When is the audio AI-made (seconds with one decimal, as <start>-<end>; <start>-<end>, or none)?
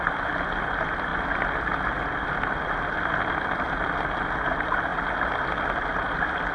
none